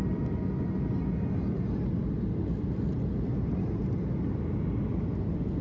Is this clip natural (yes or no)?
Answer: yes